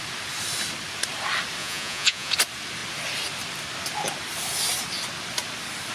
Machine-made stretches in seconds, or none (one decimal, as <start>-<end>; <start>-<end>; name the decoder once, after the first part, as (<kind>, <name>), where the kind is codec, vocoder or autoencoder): 1.6-2.3 (vocoder, Vocos)